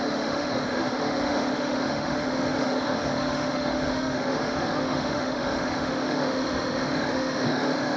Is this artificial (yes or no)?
yes